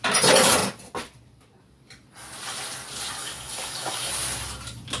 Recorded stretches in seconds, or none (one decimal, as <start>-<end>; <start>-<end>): 0.0-3.2; 4.1-5.0